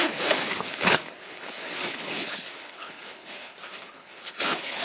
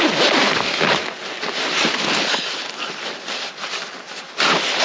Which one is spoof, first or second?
first